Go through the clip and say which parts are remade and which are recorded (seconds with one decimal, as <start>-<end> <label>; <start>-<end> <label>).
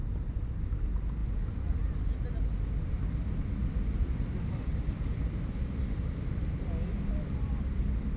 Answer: 0.0-3.6 recorded; 3.6-8.2 remade